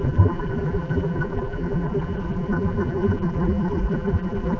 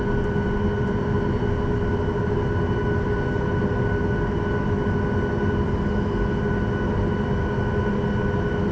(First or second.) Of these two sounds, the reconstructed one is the first